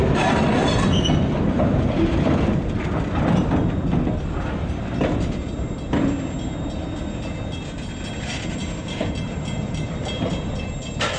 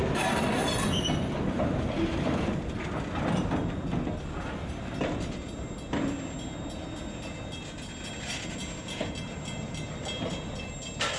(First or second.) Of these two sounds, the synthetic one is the first